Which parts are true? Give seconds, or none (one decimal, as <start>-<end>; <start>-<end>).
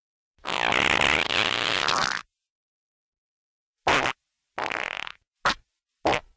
0.0-6.4